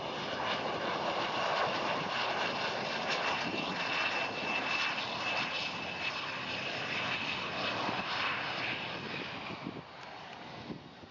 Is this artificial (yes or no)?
no